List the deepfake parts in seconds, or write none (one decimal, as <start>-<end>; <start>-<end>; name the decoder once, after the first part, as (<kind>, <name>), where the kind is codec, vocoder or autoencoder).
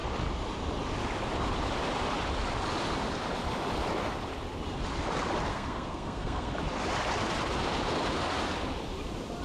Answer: 5.5-6.5 (codec, SNAC)